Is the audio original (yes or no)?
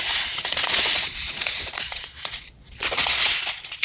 no